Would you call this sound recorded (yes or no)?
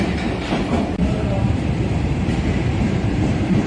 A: no